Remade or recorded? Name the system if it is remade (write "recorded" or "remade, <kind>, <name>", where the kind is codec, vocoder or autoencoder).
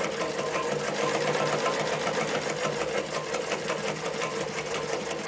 recorded